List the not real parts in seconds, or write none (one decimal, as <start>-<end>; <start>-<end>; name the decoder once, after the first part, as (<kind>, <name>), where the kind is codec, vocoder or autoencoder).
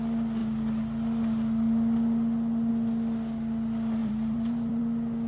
4.0-4.8 (vocoder, BigVGAN v2)